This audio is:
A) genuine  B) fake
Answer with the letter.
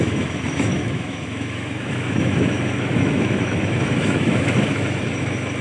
B